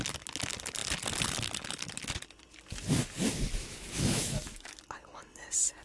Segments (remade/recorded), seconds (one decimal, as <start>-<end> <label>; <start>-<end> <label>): 0.0-3.6 recorded; 3.6-4.8 remade; 4.8-5.8 recorded